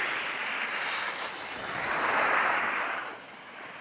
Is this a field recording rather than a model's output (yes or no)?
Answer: yes